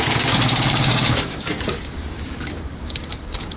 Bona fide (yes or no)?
no